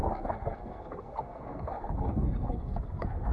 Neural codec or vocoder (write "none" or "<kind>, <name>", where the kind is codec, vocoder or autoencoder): codec, SNAC